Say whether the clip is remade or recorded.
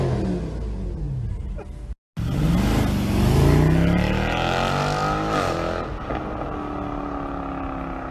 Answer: recorded